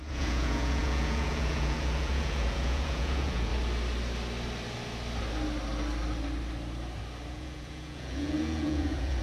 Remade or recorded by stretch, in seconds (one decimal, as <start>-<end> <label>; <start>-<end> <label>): 0.0-3.5 remade; 3.5-7.3 recorded; 7.3-9.2 remade